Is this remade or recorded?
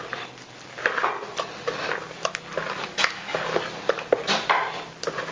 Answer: recorded